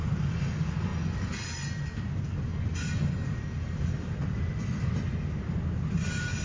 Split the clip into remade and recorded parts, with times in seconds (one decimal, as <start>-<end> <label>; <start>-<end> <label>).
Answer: 0.0-6.4 recorded